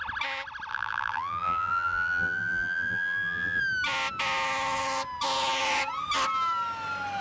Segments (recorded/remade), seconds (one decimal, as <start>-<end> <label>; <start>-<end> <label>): 0.0-0.7 recorded; 0.7-3.6 remade; 3.6-7.2 recorded